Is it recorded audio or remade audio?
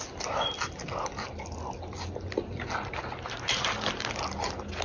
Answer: recorded